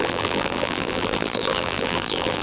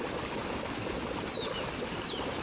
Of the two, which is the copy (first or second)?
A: first